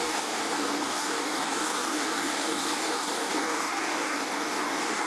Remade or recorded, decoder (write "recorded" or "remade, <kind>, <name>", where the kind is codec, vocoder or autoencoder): remade, codec, DAC